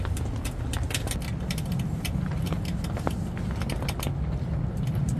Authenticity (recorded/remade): recorded